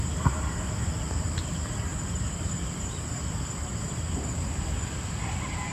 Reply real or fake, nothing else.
real